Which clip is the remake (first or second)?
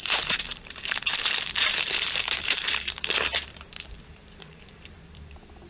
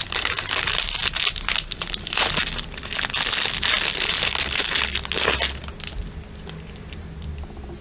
first